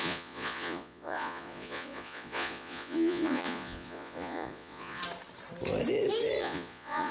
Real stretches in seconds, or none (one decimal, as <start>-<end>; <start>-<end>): 5.0-6.4